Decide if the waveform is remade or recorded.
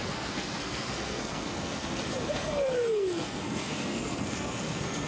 remade